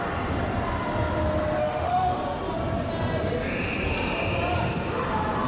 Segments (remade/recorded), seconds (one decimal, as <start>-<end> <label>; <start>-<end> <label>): 0.0-1.6 recorded; 1.6-2.2 remade; 2.2-5.5 recorded